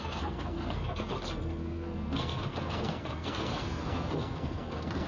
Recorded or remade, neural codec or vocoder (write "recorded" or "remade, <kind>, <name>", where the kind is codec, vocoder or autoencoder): remade, codec, SNAC